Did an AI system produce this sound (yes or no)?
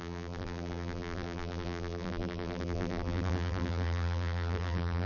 yes